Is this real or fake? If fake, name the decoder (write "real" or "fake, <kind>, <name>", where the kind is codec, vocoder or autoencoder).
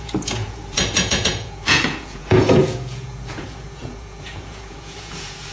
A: fake, vocoder, Vocos